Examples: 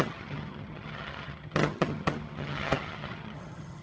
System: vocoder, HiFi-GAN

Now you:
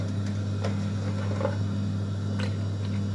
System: none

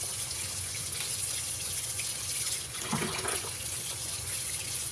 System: vocoder, Vocos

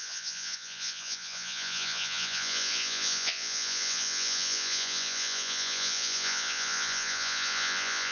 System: vocoder, Vocos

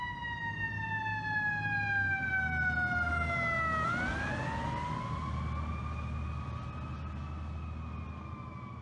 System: none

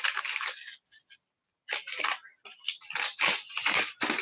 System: none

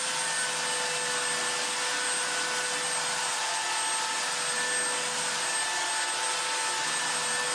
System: none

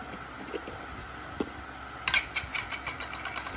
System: none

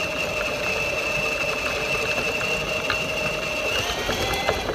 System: none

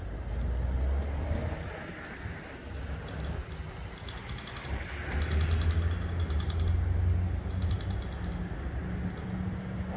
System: none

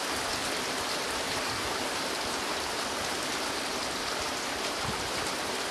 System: none